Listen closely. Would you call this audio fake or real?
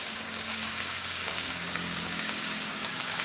fake